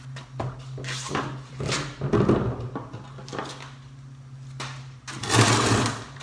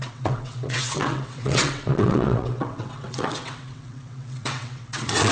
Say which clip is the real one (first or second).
first